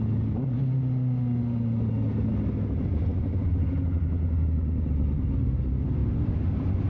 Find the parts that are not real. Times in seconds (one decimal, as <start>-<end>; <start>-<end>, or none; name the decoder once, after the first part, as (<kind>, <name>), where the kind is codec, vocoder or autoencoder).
none